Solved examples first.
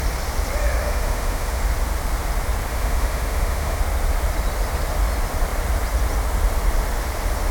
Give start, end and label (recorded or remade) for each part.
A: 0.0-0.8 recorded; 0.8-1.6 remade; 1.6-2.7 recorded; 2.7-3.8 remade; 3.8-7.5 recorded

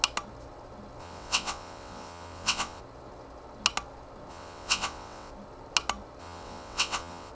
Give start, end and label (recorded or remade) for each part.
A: 0.0-1.0 recorded; 1.0-2.8 remade; 2.8-4.3 recorded; 4.3-5.3 remade; 5.3-6.2 recorded; 6.2-7.3 remade

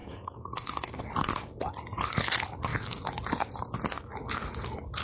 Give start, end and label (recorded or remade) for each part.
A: 0.0-1.0 remade; 1.0-5.0 recorded

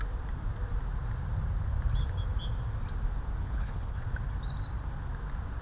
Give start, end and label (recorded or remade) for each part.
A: 0.0-3.4 recorded; 3.4-4.0 remade; 4.0-5.6 recorded

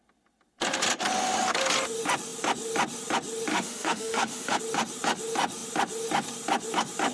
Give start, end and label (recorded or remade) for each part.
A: 0.0-3.5 recorded; 3.5-4.6 remade; 4.6-7.1 recorded

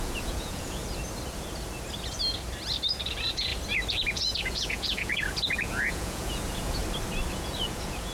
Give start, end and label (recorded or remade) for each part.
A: 0.0-0.8 remade; 0.8-3.1 recorded; 3.1-3.5 remade; 3.5-4.0 recorded; 4.0-6.8 remade; 6.8-7.3 recorded; 7.3-8.1 remade

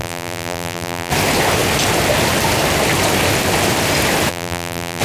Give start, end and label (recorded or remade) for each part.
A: 0.0-1.1 remade; 1.1-4.3 recorded; 4.3-5.0 remade

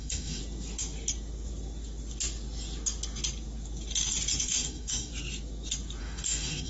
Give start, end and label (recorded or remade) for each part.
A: 0.0-0.4 remade; 0.4-4.4 recorded; 4.4-5.1 remade; 5.1-6.0 recorded; 6.0-6.7 remade